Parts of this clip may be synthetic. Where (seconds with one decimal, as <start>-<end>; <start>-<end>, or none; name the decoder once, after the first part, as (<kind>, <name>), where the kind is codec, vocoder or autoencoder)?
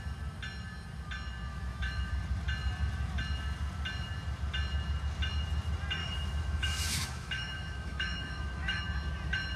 1.5-2.1 (autoencoder, DAC-VAE); 6.0-8.8